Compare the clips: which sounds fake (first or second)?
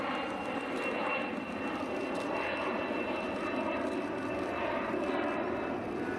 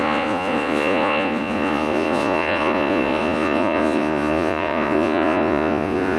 second